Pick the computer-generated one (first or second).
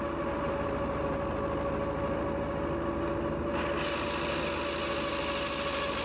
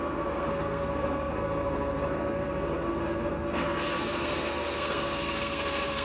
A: second